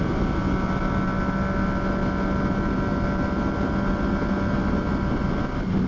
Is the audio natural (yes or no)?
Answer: yes